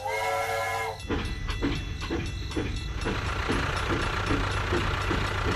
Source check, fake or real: real